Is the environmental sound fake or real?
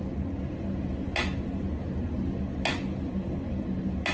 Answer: real